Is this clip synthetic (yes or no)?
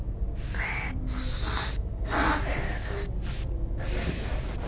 no